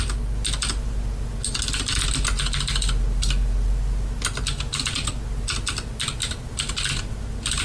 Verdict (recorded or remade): recorded